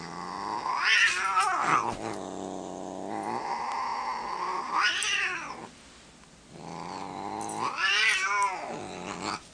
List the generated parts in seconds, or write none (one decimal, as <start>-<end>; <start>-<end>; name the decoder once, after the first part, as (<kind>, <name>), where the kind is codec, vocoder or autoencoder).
none